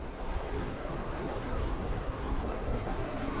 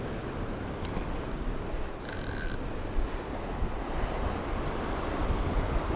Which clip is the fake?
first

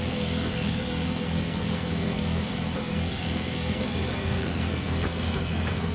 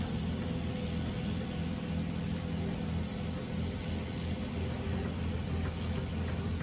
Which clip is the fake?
first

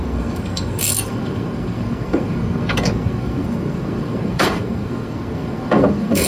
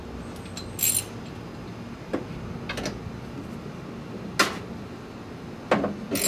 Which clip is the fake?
first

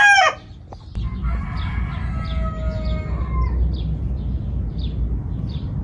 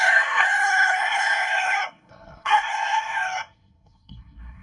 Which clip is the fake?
second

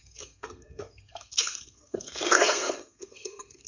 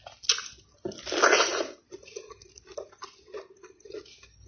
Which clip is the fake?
first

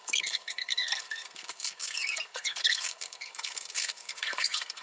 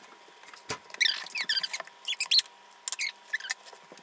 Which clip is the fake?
first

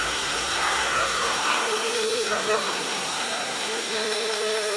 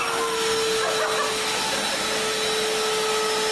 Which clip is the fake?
first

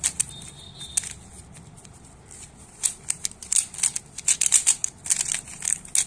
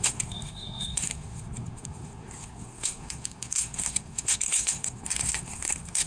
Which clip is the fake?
second